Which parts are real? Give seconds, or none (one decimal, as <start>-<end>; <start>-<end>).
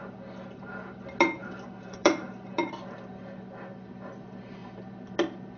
0.0-1.4; 2.7-5.6